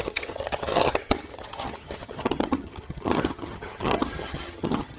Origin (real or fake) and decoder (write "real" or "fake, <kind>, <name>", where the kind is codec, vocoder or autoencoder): fake, vocoder, HiFi-GAN